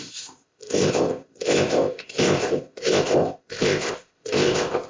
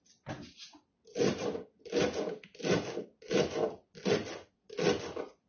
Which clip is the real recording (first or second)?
second